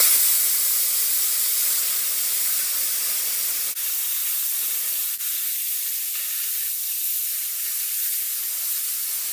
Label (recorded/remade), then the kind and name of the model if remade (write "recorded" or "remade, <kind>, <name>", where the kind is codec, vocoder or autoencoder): recorded